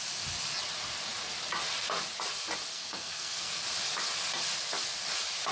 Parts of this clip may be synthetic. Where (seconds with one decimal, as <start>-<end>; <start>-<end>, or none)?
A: 2.7-3.6